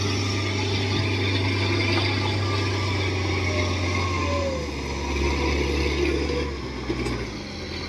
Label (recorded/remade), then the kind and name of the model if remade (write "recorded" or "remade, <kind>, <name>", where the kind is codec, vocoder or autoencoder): recorded